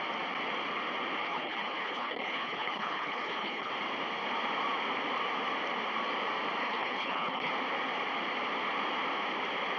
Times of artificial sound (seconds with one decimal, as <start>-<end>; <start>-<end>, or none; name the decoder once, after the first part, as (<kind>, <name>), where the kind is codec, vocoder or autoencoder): 1.2-3.7 (codec, HILCodec); 6.6-7.5